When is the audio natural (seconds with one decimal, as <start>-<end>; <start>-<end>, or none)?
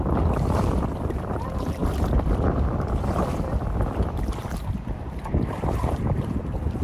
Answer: 1.8-4.2